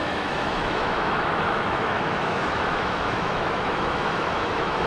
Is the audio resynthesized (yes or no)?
yes